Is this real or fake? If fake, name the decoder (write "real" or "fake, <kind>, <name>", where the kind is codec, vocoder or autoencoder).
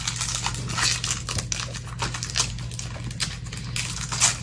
real